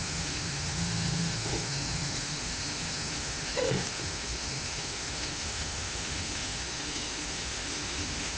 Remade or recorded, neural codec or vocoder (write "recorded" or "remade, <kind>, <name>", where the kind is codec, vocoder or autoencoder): remade, autoencoder, DAC-VAE